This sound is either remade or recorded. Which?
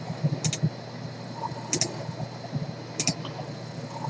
recorded